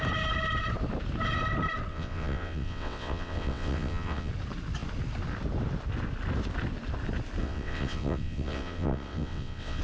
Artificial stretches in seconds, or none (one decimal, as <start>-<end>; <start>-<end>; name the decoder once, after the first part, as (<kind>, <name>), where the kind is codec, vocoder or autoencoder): 1.9-4.3 (vocoder, WaveNeXt); 7.4-9.8